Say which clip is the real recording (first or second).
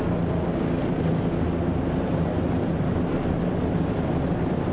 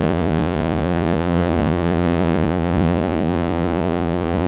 first